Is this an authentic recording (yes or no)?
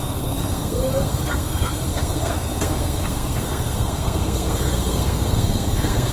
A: no